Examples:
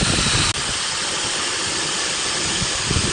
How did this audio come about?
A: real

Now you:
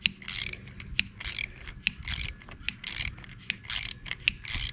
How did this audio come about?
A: real